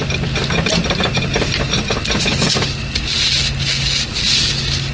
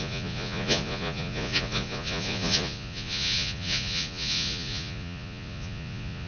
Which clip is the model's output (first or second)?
second